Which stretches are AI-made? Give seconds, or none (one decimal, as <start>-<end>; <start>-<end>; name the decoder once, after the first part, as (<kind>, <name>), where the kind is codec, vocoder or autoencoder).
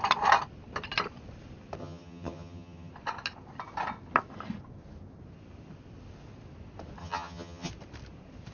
1.8-2.9 (vocoder, HiFi-GAN); 7.0-7.7